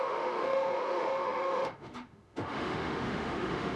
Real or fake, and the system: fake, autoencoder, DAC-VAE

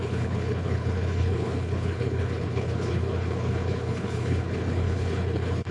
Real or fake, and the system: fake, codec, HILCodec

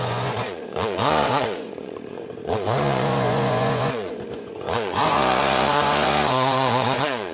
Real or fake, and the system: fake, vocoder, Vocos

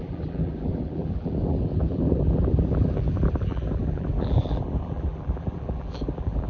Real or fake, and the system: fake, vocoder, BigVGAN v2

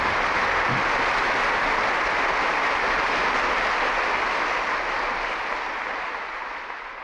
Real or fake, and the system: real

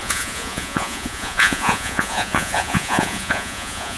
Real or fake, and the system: fake, vocoder, Vocos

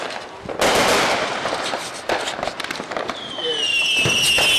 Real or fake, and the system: real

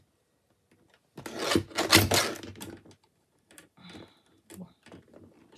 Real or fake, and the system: real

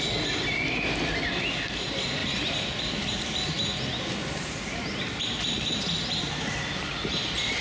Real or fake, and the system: real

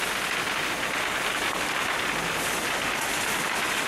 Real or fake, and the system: real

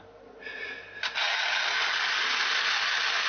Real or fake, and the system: real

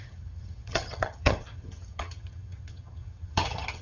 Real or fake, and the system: fake, vocoder, HiFi-GAN